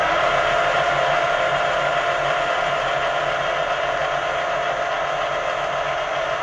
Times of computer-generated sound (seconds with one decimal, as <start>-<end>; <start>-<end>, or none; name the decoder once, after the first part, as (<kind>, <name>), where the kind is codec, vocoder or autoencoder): 0.0-4.0 (vocoder, BigVGAN v2)